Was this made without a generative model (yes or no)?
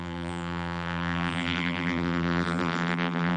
no